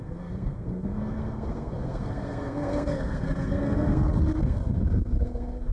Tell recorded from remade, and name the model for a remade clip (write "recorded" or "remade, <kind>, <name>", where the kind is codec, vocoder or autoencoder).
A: remade, codec, SNAC